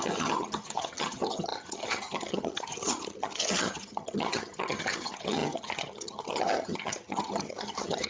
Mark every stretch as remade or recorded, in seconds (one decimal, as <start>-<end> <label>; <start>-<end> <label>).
0.0-8.1 remade